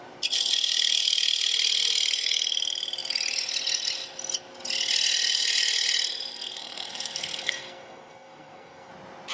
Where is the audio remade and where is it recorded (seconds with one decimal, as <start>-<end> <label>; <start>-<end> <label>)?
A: 0.0-6.3 recorded; 6.3-8.9 remade; 8.9-9.3 recorded